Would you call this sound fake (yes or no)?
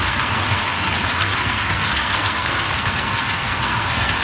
yes